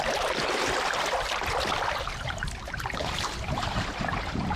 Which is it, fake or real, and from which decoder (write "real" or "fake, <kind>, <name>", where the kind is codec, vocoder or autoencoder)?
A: real